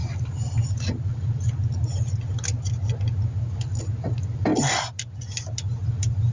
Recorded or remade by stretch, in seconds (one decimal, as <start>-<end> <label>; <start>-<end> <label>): 0.0-6.3 recorded